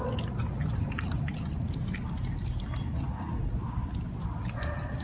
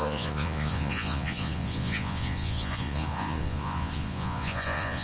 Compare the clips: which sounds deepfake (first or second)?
second